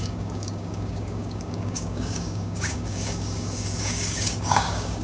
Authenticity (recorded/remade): remade